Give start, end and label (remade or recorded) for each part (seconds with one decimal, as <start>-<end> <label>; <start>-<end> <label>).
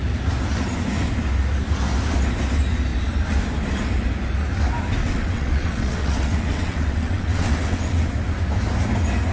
0.0-5.0 recorded; 5.0-8.0 remade; 8.0-9.3 recorded